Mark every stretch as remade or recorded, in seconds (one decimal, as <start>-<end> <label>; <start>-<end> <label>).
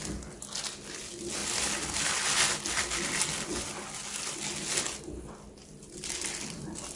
0.0-7.0 recorded